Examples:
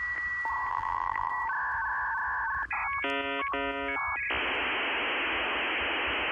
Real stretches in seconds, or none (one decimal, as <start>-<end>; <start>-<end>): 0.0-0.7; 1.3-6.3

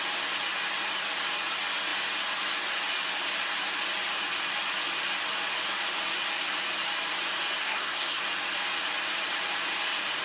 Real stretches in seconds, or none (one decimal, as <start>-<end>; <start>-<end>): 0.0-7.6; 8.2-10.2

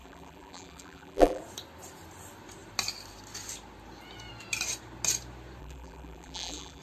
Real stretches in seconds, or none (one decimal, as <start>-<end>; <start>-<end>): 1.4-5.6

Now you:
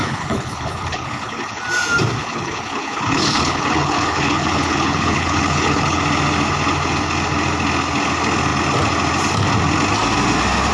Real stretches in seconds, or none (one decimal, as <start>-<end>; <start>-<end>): 1.6-2.2; 6.0-10.7